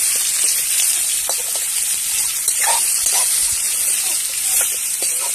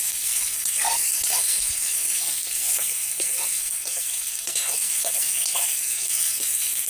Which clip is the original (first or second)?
first